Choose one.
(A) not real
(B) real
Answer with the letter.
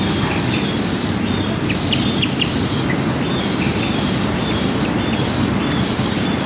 B